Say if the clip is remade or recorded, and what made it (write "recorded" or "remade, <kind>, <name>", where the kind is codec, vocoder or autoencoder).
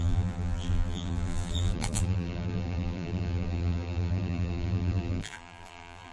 remade, vocoder, BigVGAN v2